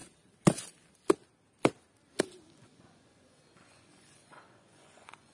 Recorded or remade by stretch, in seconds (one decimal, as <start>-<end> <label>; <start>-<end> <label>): 0.0-2.5 recorded; 2.5-5.3 remade